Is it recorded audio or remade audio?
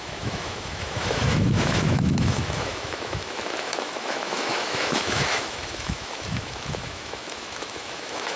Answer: remade